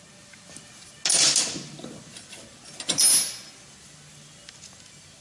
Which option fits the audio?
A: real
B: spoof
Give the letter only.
A